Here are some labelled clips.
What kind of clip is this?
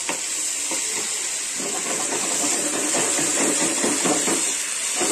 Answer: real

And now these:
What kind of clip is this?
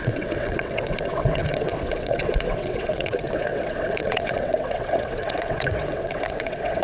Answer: fake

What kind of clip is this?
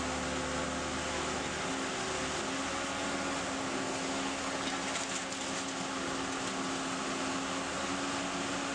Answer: real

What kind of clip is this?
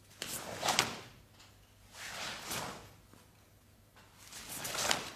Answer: real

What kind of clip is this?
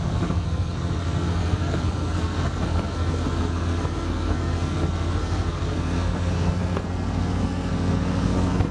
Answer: fake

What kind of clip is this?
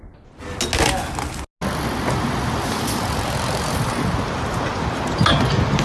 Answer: real